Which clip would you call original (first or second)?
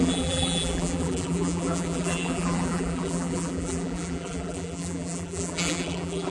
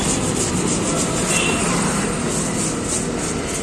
second